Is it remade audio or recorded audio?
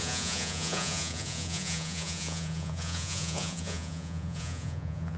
remade